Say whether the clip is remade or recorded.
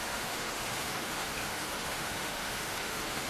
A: remade